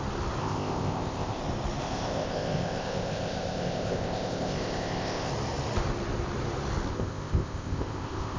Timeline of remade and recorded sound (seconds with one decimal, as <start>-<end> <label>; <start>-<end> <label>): 0.0-0.4 recorded; 0.4-1.4 remade; 1.4-1.8 recorded; 1.8-5.3 remade; 5.3-6.9 recorded; 6.9-8.4 remade